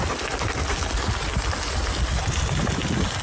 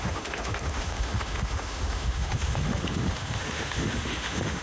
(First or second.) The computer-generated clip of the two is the second